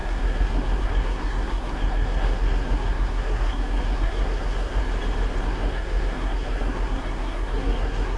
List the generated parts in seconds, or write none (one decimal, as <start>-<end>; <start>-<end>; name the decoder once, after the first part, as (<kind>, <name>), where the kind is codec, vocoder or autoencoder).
0.0-4.8 (codec, SNAC); 5.4-8.2